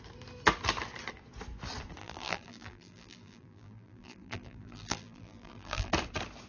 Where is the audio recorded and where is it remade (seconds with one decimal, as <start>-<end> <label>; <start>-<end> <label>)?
0.0-2.0 recorded; 2.0-5.9 remade; 5.9-6.5 recorded